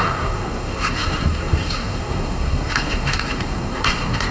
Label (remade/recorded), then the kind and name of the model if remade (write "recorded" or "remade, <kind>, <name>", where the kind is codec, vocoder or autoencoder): remade, codec, SNAC